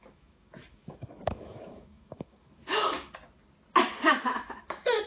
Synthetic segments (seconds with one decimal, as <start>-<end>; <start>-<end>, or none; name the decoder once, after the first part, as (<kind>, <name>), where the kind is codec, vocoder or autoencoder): 0.0-3.1 (autoencoder, DAC-VAE); 4.0-5.1